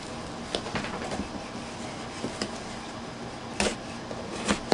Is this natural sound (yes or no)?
yes